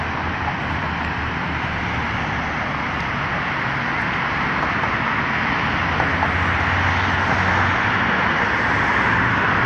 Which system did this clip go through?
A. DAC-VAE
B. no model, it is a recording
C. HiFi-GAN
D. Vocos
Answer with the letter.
B